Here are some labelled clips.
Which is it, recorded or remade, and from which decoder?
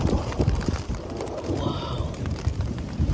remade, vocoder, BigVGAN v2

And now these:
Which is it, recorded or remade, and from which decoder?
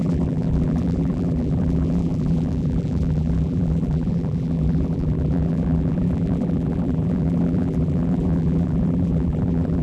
remade, vocoder, BigVGAN v2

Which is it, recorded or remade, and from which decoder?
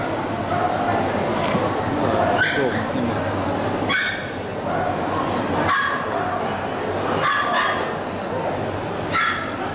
recorded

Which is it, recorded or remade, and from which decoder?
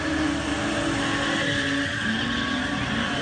recorded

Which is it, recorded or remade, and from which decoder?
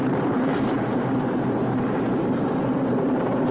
remade, vocoder, BigVGAN v2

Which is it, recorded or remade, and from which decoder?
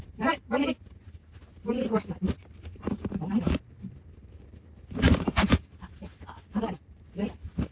remade, vocoder, BigVGAN v2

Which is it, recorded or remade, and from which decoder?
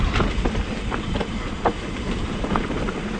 recorded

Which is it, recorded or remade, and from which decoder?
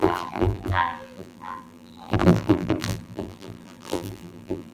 remade, vocoder, BigVGAN v2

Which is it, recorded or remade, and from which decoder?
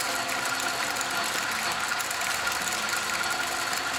recorded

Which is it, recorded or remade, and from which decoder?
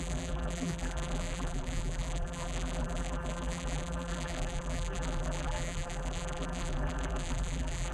remade, vocoder, BigVGAN v2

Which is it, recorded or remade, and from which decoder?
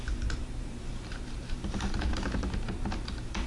remade, vocoder, BigVGAN v2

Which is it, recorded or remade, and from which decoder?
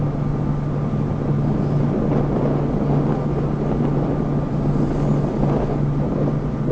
recorded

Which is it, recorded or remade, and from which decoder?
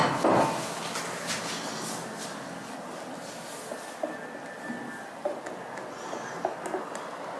recorded